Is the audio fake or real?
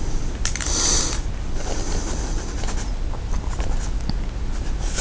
real